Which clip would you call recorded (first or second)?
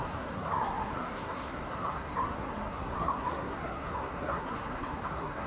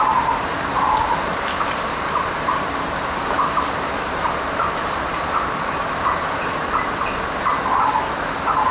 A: second